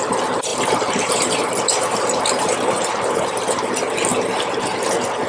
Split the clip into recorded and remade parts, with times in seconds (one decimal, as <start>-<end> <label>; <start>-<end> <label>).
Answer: 0.0-0.5 recorded; 0.5-3.7 remade; 3.7-5.3 recorded